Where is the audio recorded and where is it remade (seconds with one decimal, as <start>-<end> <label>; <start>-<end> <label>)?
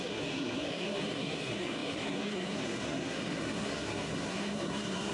0.0-5.1 remade